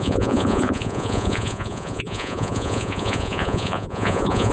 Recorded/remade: remade